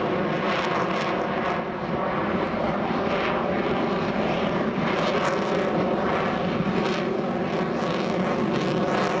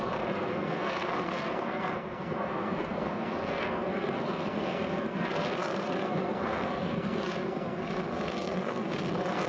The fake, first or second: second